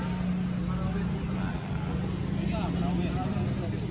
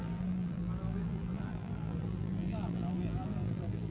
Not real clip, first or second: second